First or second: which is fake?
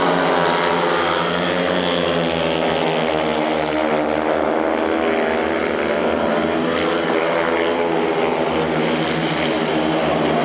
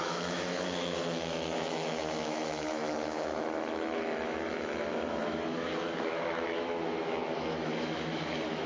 second